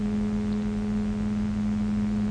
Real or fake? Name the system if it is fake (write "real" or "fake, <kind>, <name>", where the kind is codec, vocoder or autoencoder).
real